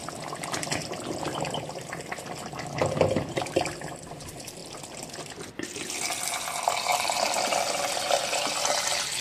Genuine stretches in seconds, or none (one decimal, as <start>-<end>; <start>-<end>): 0.0-9.2